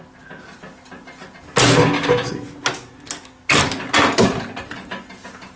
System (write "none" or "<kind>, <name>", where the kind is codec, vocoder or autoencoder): none